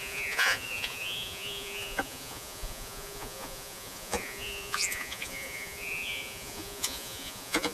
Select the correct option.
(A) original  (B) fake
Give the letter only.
B